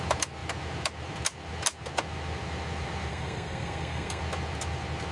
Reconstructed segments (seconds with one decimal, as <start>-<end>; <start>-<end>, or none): 3.1-4.2